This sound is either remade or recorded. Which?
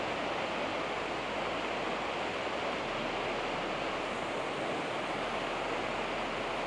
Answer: recorded